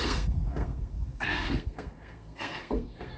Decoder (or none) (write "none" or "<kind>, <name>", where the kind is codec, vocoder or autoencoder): codec, SNAC